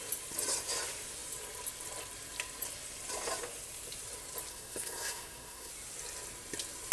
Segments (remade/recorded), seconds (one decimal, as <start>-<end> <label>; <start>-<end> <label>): 0.0-4.5 recorded; 4.5-5.7 remade; 5.7-6.9 recorded